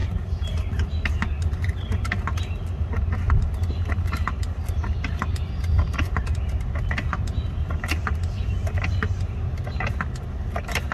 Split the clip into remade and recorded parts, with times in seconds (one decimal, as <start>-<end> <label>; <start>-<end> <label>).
0.0-3.4 remade; 3.4-10.9 recorded